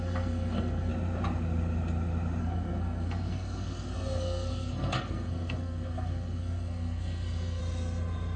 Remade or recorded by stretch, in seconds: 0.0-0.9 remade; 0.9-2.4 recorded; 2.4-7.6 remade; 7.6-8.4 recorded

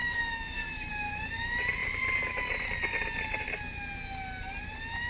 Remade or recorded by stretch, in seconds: 0.0-0.9 remade; 0.9-5.1 recorded

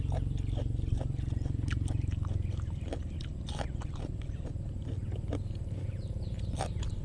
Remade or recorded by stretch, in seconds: 0.0-7.0 recorded

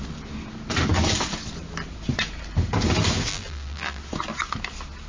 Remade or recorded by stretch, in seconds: 0.0-3.3 recorded; 3.3-4.0 remade; 4.0-5.1 recorded

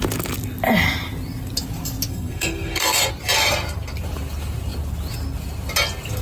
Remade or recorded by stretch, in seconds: 0.0-2.1 recorded; 2.1-3.1 remade; 3.1-6.2 recorded